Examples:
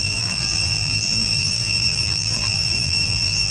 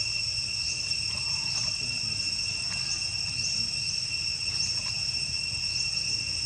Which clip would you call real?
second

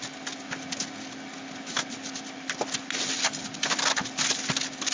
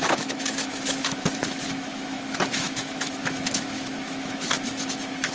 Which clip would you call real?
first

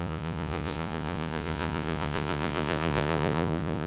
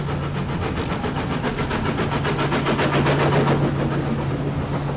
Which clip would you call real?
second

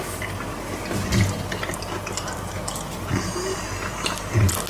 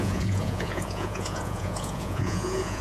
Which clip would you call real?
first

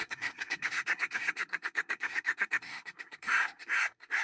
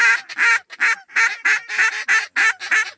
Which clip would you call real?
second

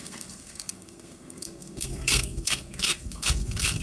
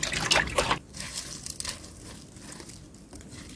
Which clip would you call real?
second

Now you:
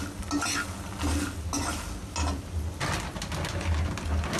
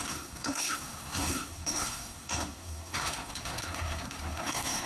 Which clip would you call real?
first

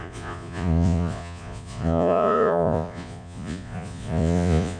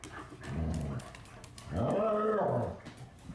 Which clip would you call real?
second